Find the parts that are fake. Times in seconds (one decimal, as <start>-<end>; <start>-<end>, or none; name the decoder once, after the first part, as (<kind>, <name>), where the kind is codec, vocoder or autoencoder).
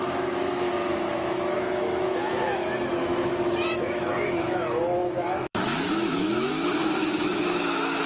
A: 0.0-8.1 (autoencoder, DAC-VAE)